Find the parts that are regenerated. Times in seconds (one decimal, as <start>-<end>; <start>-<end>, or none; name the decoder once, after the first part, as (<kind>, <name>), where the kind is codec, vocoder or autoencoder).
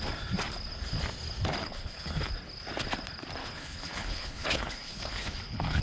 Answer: 1.6-2.3 (codec, HILCodec); 3.4-5.8